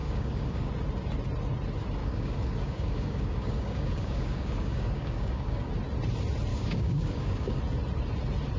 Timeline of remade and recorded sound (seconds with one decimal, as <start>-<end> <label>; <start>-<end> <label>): 0.0-0.7 remade; 0.7-2.0 recorded; 2.0-5.7 remade; 5.7-6.5 recorded; 6.5-7.6 remade; 7.6-8.6 recorded